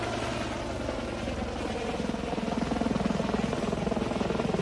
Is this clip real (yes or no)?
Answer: yes